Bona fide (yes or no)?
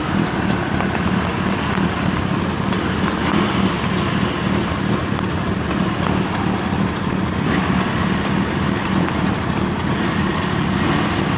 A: yes